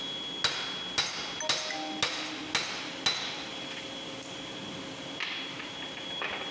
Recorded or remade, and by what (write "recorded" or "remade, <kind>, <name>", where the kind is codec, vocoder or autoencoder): recorded